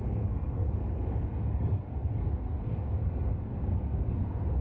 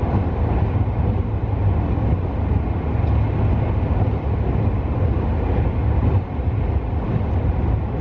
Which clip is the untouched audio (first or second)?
second